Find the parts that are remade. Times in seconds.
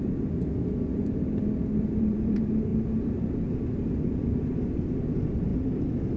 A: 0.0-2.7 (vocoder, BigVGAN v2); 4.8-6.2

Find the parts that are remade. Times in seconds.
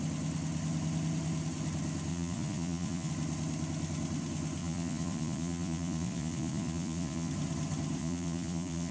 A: 2.1-3.1 (vocoder, Vocos); 4.6-7.3; 8.0-8.9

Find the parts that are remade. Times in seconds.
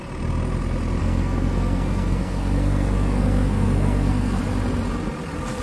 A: 1.0-4.4 (codec, SNAC)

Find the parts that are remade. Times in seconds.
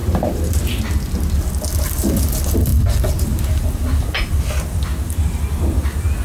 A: 0.0-0.8 (vocoder, BigVGAN v2)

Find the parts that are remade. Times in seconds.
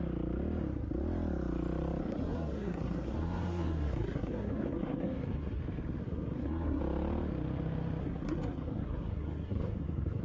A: 2.0-5.6 (codec, SNAC); 6.0-6.8; 8.0-10.2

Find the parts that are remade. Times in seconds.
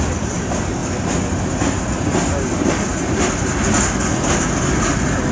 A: none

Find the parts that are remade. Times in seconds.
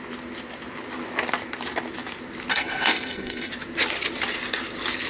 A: 2.5-3.5 (codec, SNAC)